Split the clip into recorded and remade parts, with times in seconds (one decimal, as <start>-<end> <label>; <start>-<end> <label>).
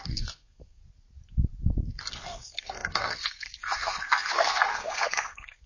0.0-0.8 remade; 0.8-1.8 recorded; 1.8-5.7 remade